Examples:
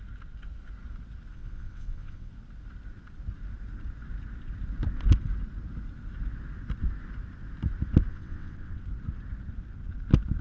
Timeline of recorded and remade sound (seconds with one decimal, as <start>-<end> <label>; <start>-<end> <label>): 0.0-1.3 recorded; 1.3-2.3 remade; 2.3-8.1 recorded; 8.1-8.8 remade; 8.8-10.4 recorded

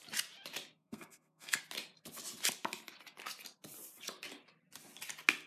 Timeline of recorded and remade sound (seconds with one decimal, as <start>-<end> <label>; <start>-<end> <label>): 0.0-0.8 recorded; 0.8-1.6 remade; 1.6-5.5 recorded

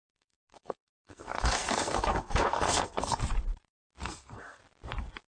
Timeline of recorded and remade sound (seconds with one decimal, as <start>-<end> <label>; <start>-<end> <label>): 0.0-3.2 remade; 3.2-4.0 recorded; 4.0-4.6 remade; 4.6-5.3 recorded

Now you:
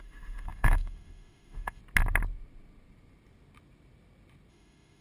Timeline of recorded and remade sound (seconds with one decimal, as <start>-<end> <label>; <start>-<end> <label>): 0.0-1.8 remade; 1.8-4.5 recorded; 4.5-5.0 remade

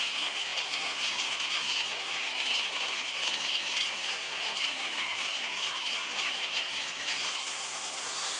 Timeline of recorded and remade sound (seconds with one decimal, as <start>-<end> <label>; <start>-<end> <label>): 0.0-8.4 remade